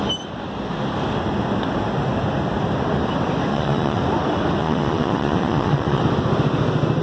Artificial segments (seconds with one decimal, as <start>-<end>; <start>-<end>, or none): 3.5-4.0; 4.6-6.0